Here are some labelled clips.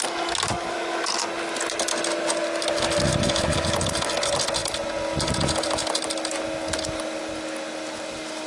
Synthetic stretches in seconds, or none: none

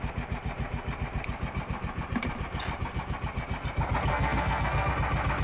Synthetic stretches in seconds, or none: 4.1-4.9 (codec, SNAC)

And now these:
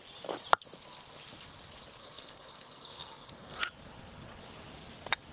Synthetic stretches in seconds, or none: 2.0-3.6 (codec, SNAC)

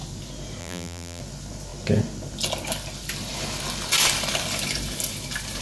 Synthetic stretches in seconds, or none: 0.6-1.2 (vocoder, BigVGAN v2)

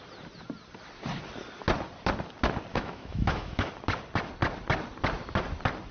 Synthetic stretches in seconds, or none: 2.7-3.7 (autoencoder, DAC-VAE)